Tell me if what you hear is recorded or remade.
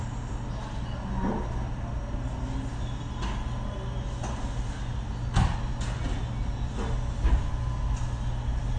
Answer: recorded